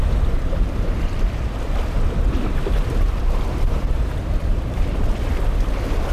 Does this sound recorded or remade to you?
remade